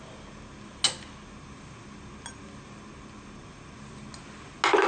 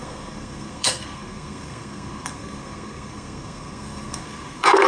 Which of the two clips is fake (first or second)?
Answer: second